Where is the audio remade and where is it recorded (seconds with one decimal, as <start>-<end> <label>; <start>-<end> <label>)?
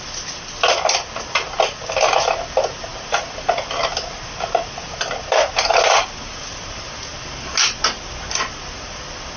0.0-9.4 recorded